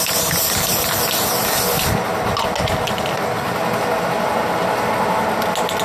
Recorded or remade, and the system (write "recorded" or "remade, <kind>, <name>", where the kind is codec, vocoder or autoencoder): recorded